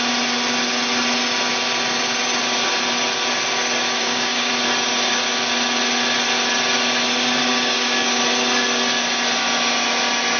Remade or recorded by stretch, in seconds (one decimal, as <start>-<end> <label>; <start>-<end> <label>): 0.0-4.0 recorded; 4.0-4.5 remade; 4.5-7.5 recorded; 7.5-8.2 remade; 8.2-10.4 recorded